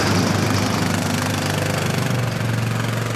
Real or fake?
real